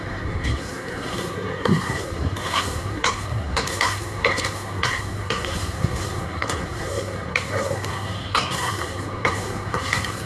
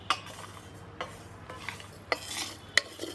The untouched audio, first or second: second